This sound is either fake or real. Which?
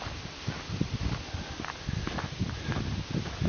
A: real